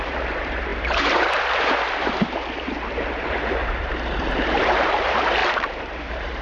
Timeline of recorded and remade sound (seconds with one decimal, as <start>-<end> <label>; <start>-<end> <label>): 0.0-6.4 remade

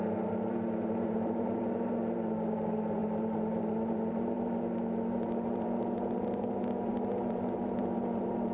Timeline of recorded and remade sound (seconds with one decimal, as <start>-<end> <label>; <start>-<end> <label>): 0.0-8.5 remade

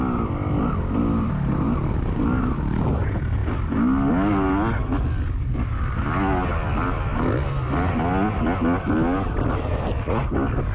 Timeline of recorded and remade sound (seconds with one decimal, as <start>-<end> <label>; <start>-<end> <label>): 0.0-10.7 recorded

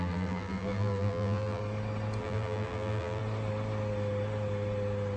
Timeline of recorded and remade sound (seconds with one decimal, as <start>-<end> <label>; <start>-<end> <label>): 0.0-1.6 remade; 1.6-2.2 recorded; 2.2-3.2 remade; 3.2-5.2 recorded

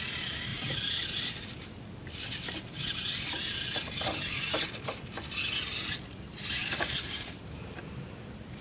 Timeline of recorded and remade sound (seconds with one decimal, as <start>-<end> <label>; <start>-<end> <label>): 0.0-0.5 recorded; 0.5-4.7 remade; 4.7-6.6 recorded; 6.6-7.4 remade; 7.4-8.6 recorded

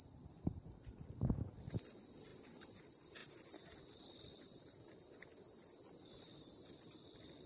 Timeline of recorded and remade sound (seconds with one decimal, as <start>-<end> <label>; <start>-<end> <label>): 0.0-3.2 remade; 3.2-4.0 recorded; 4.0-5.3 remade; 5.3-6.0 recorded; 6.0-7.5 remade

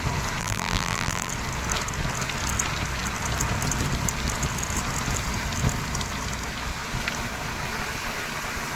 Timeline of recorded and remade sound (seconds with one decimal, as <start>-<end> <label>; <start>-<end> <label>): 0.0-0.4 recorded; 0.4-1.3 remade; 1.3-8.8 recorded